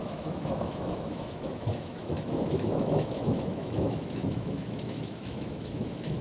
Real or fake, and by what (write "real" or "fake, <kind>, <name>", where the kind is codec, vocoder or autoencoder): fake, autoencoder, DAC-VAE